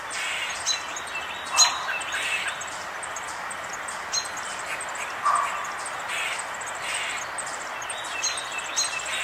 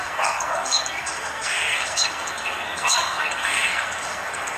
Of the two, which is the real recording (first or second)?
first